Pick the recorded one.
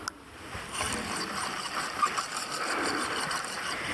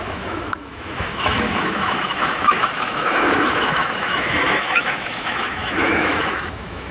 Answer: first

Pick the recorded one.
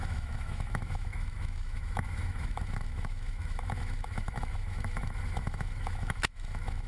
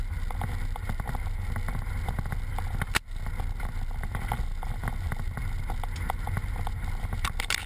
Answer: second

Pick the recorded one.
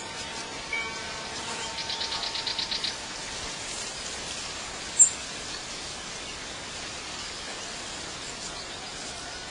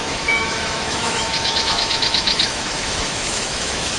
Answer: first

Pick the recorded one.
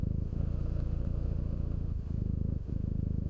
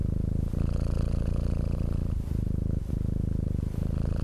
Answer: second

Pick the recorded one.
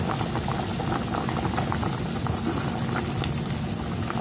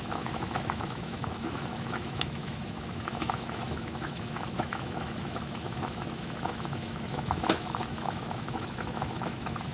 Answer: first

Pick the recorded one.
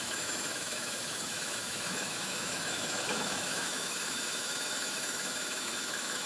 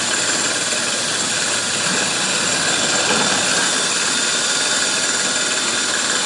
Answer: second